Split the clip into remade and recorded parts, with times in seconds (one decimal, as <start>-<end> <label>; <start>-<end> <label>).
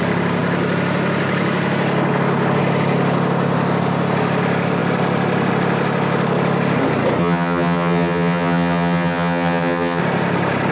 0.0-7.2 recorded; 7.2-10.0 remade; 10.0-10.7 recorded